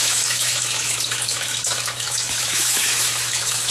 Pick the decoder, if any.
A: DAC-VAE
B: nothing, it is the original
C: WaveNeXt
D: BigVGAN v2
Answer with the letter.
A